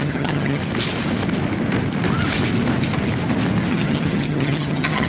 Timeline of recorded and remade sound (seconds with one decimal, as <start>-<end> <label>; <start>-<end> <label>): 0.0-0.6 remade; 0.6-3.7 recorded; 3.7-5.1 remade